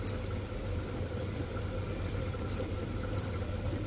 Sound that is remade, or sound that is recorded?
recorded